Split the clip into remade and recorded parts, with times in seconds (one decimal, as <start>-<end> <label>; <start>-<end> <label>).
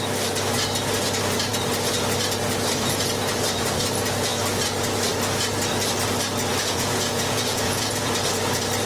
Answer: 0.0-6.5 recorded; 6.5-8.1 remade; 8.1-8.9 recorded